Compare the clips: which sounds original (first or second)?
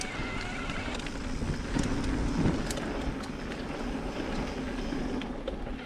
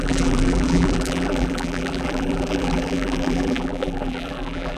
first